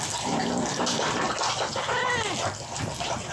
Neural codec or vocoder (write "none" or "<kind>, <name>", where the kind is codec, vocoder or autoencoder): none